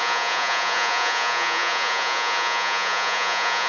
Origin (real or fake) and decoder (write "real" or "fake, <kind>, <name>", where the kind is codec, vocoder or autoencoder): fake, vocoder, Vocos